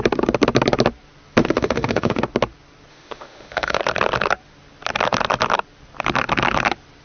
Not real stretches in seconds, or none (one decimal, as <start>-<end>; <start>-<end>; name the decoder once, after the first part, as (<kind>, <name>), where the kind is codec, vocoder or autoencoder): 1.4-2.2 (autoencoder, DAC-VAE); 2.9-3.8